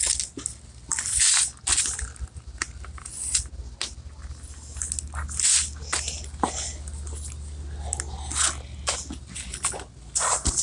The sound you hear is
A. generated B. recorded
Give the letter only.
B